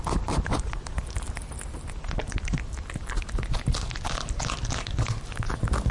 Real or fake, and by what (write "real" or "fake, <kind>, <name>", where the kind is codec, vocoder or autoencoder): real